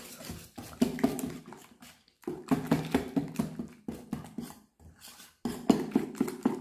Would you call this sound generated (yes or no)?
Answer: no